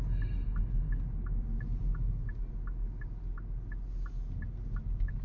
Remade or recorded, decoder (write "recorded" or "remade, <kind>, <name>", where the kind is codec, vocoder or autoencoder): recorded